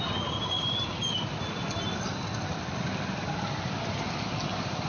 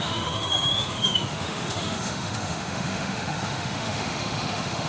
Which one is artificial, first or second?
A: second